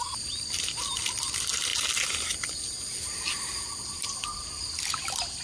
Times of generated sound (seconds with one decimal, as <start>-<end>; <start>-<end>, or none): none